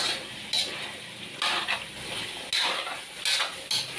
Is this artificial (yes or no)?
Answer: no